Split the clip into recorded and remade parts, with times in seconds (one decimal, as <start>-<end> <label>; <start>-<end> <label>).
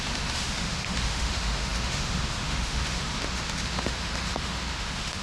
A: 0.0-5.2 remade